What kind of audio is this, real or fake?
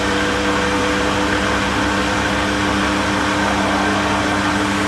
real